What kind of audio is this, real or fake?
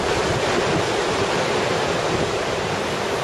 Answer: real